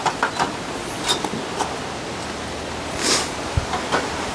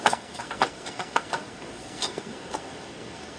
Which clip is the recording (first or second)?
first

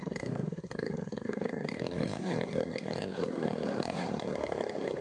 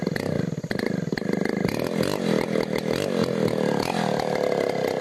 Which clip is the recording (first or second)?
second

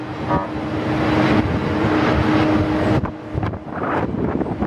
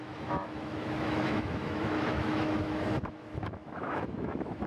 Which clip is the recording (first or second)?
first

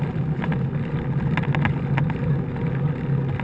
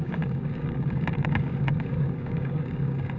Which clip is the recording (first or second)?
first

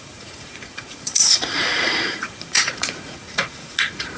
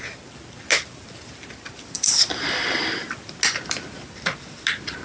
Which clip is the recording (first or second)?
second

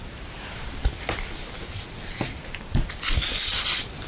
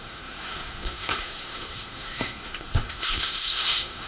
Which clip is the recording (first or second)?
first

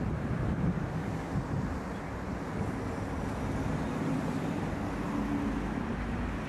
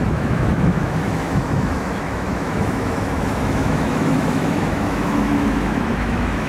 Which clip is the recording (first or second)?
first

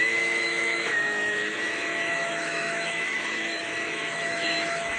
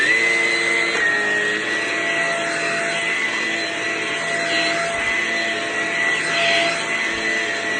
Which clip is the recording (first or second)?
second